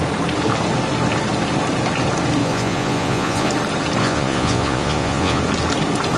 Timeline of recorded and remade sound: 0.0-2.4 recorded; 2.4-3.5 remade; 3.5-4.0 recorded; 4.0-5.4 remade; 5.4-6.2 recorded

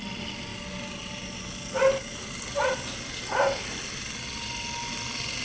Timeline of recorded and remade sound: 0.0-5.4 recorded